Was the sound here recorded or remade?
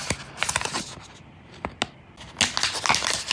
recorded